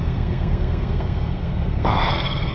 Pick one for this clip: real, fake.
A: fake